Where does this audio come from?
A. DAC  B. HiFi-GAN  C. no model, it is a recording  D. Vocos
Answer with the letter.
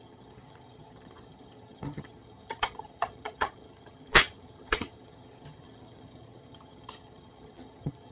B